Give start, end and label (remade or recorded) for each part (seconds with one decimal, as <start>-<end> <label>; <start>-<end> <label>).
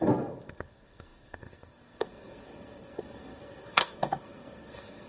0.0-5.1 remade